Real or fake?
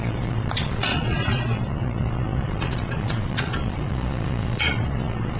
fake